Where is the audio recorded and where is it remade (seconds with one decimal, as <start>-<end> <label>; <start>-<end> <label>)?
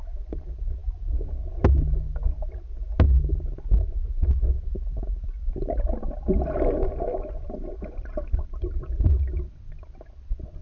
0.0-10.6 recorded